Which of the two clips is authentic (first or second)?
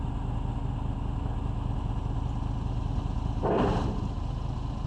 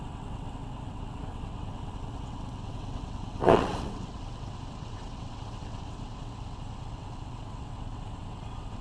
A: first